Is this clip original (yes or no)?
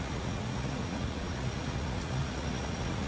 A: no